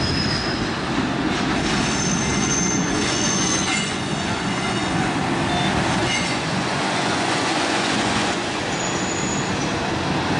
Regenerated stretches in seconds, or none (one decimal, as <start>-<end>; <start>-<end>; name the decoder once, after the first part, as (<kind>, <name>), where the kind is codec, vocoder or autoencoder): 2.3-5.2 (vocoder, Vocos); 6.0-8.6